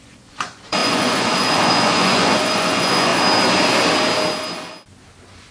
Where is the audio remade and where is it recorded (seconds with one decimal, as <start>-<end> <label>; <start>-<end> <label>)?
0.0-3.1 remade; 3.1-5.5 recorded